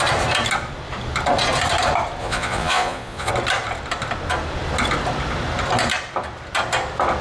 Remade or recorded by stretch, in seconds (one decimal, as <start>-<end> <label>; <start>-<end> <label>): 0.0-2.2 recorded; 2.2-3.3 remade; 3.3-7.2 recorded